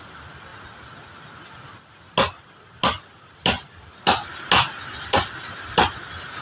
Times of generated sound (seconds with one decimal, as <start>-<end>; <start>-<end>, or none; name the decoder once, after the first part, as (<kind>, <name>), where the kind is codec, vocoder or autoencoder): none